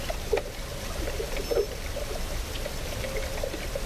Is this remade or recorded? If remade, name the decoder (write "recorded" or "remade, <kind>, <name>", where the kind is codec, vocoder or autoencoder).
recorded